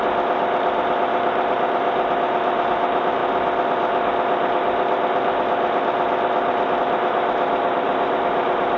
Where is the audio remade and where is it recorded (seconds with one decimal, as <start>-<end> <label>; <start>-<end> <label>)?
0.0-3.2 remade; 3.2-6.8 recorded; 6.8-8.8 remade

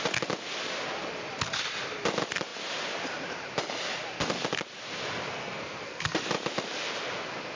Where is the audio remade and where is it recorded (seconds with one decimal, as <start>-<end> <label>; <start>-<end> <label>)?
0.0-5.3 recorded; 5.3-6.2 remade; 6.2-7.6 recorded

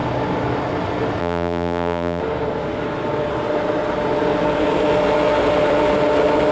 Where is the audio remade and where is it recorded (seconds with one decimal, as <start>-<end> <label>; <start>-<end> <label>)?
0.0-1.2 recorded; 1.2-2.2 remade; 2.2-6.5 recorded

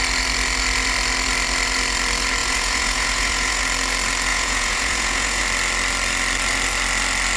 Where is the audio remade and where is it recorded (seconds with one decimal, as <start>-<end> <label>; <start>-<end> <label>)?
0.0-2.4 recorded; 2.4-3.6 remade; 3.6-4.3 recorded; 4.3-5.4 remade; 5.4-7.4 recorded

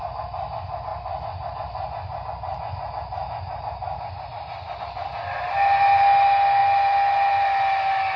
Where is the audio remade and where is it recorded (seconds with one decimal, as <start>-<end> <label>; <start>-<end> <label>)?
0.0-8.2 recorded

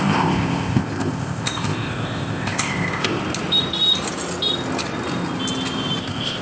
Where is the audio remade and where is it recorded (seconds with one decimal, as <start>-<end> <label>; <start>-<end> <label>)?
0.0-3.2 remade; 3.2-6.0 recorded; 6.0-6.4 remade

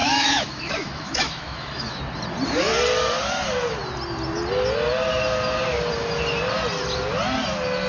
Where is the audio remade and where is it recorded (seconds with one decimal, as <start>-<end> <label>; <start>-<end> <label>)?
0.0-2.0 remade; 2.0-7.9 recorded

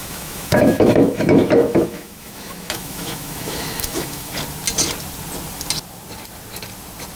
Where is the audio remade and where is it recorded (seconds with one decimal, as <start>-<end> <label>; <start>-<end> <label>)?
0.0-4.3 remade; 4.3-7.2 recorded